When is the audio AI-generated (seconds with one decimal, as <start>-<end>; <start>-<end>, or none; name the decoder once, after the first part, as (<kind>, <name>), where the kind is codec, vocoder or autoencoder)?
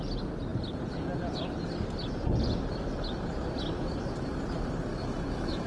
4.9-5.7 (autoencoder, DAC-VAE)